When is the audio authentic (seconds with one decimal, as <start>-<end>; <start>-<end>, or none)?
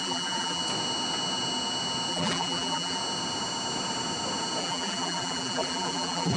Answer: 0.6-2.1; 3.0-4.6